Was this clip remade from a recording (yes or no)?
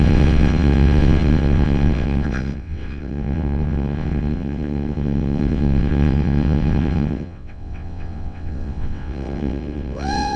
yes